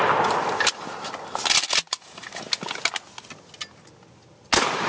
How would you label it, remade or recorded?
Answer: recorded